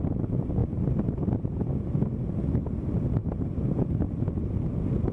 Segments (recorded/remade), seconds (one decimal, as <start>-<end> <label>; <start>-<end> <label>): 0.0-3.2 recorded; 3.2-5.1 remade